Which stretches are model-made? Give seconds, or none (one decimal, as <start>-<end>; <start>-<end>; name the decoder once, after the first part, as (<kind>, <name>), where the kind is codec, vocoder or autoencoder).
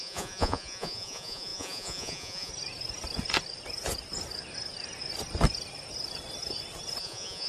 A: 0.0-2.5 (vocoder, Vocos); 7.0-7.5